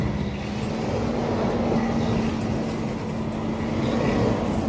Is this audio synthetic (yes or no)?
no